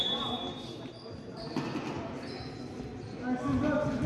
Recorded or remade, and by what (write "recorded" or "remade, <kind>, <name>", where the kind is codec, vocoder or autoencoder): recorded